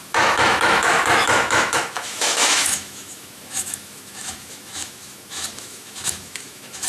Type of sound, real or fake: fake